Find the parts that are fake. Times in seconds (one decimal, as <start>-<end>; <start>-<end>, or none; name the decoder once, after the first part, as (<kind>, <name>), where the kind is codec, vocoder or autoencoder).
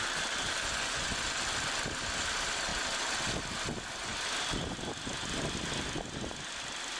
0.7-1.2 (vocoder, Vocos)